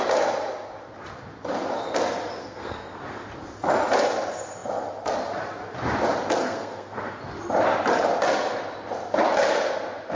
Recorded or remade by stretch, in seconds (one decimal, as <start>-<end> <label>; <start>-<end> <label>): 0.0-2.4 recorded; 2.4-3.0 remade; 3.0-6.4 recorded; 6.4-7.2 remade; 7.2-10.1 recorded